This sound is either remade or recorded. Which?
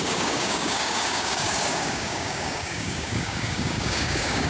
remade